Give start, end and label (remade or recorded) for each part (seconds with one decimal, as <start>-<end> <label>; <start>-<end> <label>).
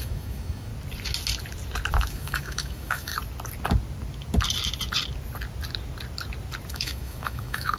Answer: 0.0-0.7 remade; 0.7-2.1 recorded; 2.1-3.1 remade; 3.1-6.7 recorded; 6.7-7.8 remade